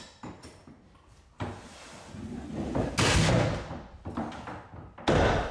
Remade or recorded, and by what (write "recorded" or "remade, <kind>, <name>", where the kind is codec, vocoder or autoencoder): recorded